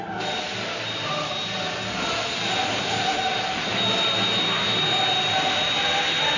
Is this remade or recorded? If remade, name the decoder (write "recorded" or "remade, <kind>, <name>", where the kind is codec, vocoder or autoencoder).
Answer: recorded